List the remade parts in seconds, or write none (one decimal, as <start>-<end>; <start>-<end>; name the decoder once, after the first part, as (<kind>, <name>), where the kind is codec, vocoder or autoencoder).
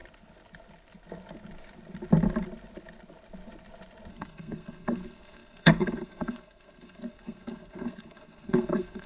4.1-9.1 (codec, SNAC)